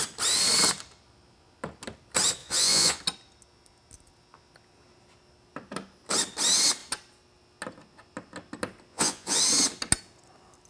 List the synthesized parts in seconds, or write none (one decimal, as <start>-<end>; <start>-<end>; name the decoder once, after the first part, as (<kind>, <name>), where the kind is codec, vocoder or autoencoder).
2.4-3.0 (vocoder, Vocos); 8.9-9.4